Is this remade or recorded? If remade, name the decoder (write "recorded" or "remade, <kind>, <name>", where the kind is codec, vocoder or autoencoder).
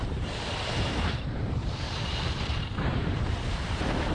remade, vocoder, BigVGAN v2